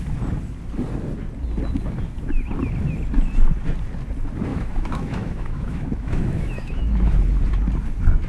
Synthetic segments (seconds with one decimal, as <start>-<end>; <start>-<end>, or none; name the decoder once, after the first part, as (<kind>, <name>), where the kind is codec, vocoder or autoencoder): 4.5-7.2 (autoencoder, DAC-VAE)